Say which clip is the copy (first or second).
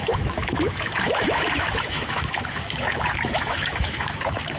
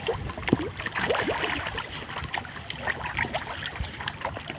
first